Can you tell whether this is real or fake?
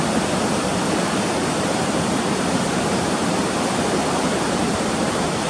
fake